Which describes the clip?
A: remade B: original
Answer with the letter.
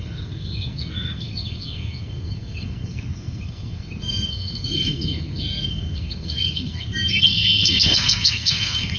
A